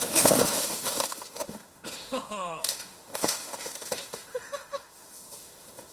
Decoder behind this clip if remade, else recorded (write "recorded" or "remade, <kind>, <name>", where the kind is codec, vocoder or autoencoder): remade, autoencoder, DAC-VAE